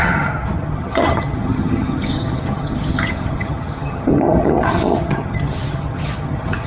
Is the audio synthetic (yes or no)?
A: yes